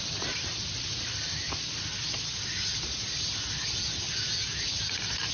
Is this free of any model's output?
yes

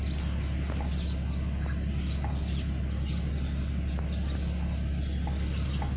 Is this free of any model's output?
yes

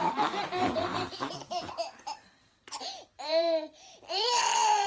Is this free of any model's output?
no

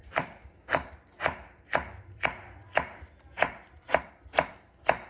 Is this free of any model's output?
yes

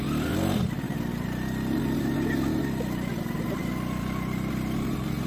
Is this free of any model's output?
yes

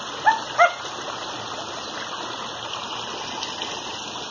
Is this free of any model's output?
yes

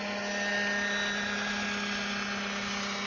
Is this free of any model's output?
yes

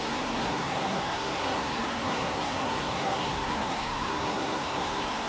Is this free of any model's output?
no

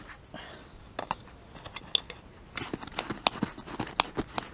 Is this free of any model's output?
yes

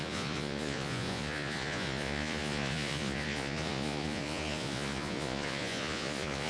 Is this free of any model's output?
no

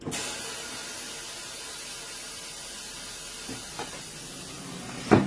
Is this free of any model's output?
yes